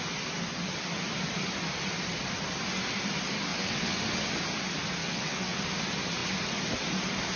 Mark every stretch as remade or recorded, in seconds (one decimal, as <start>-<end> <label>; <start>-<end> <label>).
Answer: 0.0-3.5 recorded; 3.5-4.0 remade; 4.0-5.0 recorded; 5.0-5.6 remade; 5.6-7.4 recorded